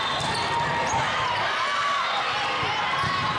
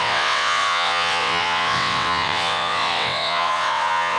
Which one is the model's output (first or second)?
second